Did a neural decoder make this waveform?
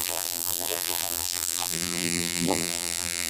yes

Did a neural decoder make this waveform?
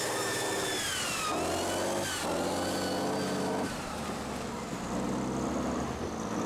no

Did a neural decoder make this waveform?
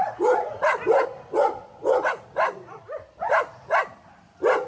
yes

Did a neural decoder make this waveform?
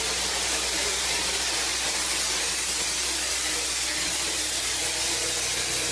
no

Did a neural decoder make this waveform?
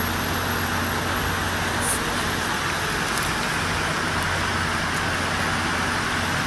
no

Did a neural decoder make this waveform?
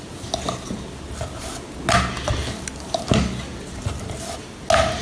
no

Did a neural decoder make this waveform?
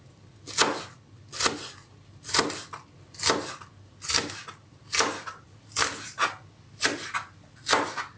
no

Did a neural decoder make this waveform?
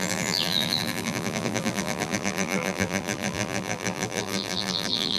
yes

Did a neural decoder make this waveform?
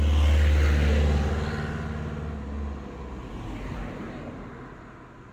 no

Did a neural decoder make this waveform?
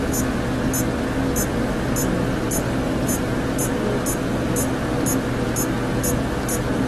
no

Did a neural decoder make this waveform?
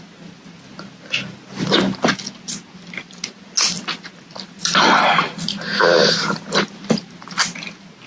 no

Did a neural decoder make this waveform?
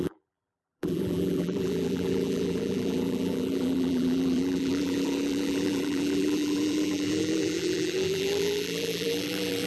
yes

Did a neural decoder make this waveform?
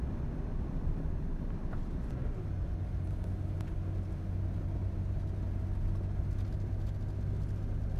no